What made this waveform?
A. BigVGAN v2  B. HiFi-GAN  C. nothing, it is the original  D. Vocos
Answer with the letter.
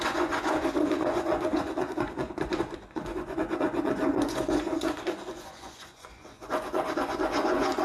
D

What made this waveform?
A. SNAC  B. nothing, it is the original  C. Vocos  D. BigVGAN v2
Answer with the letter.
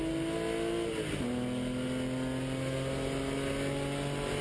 B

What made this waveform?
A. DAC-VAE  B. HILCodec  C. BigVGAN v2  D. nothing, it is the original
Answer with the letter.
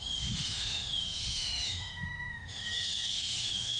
A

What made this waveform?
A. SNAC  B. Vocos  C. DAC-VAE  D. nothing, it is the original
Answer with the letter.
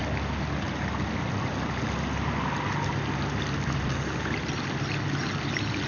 D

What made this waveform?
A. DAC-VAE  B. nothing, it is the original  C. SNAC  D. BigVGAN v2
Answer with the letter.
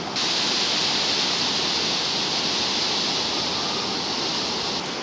B